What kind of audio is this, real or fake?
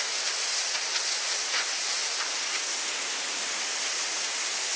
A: real